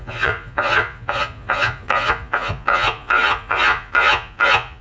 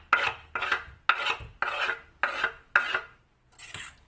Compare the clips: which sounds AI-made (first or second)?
first